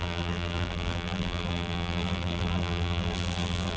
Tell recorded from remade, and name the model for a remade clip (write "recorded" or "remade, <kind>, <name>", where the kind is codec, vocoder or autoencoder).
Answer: remade, vocoder, BigVGAN v2